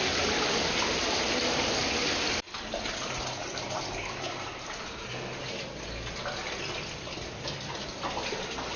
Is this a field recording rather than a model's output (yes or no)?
yes